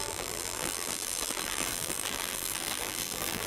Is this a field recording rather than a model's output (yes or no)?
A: no